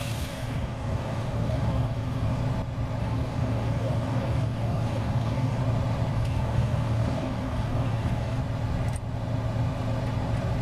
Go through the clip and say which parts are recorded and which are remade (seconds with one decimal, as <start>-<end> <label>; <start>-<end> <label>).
0.0-2.4 remade; 2.4-3.0 recorded; 3.0-5.6 remade; 5.6-6.1 recorded; 6.1-8.4 remade; 8.4-10.6 recorded